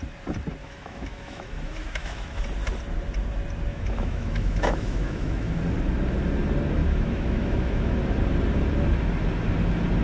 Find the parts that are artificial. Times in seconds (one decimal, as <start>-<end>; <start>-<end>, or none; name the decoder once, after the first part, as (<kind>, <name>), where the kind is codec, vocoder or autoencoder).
0.6-2.4 (autoencoder, DAC-VAE); 3.7-5.6; 6.8-8.0